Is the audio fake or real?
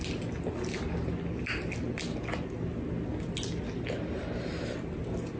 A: real